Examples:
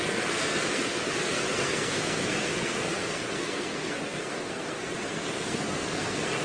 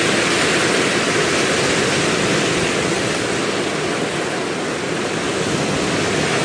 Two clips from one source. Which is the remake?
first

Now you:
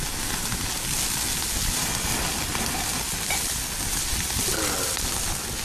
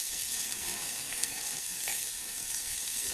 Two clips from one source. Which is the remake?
second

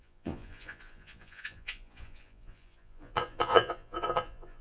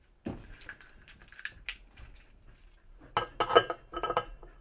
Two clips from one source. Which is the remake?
first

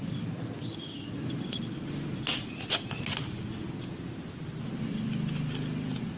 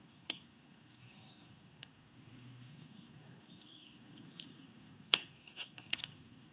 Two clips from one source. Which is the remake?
second